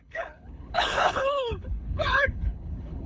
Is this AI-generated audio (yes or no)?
yes